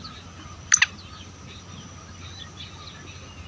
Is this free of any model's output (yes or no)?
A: yes